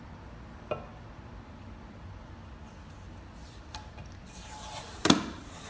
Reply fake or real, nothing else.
real